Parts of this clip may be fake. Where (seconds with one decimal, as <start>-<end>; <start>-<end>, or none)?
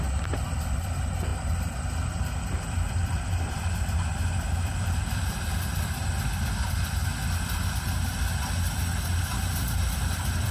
0.0-7.0; 9.9-10.5